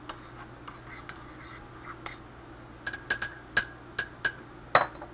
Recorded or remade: recorded